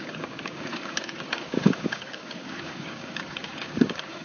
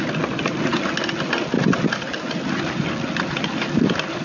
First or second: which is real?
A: second